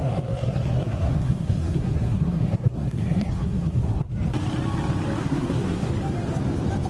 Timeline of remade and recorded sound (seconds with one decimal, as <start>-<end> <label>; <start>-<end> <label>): 0.0-4.1 remade; 4.1-5.2 recorded; 5.2-5.9 remade; 5.9-6.9 recorded